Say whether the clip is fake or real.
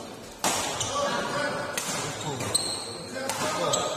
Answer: real